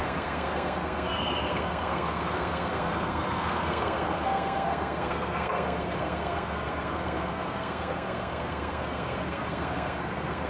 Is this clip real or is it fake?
fake